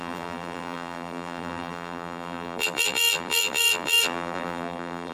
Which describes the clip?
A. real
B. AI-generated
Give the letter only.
B